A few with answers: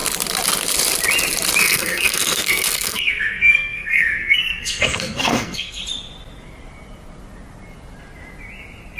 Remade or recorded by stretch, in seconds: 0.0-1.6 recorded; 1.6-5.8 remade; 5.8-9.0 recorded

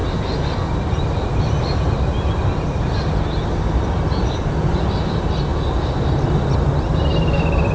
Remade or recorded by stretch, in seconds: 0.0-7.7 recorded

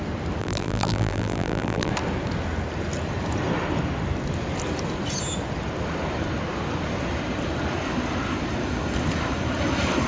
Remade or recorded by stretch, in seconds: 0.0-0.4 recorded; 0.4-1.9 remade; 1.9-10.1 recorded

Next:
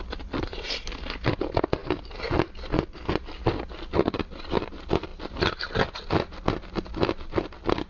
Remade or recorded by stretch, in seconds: 0.0-7.9 recorded

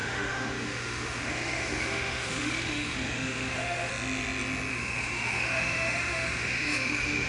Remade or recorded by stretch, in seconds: 0.0-3.9 remade; 3.9-4.7 recorded; 4.7-7.3 remade

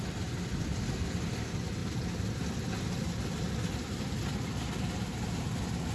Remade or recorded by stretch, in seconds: 0.0-5.9 recorded

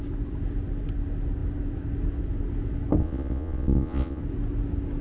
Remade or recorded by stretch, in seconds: 0.0-3.0 recorded; 3.0-4.2 remade; 4.2-5.0 recorded